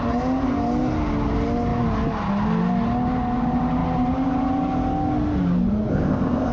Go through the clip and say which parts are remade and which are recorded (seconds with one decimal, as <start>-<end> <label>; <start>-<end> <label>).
0.0-5.9 recorded; 5.9-6.5 remade